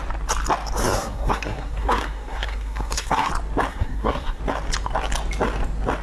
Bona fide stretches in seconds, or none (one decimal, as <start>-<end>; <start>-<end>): 0.0-0.8; 3.3-3.7; 4.4-6.0